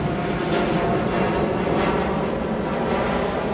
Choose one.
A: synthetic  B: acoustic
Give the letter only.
B